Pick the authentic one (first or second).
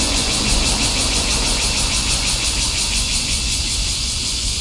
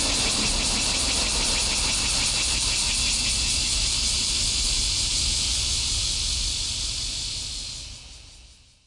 second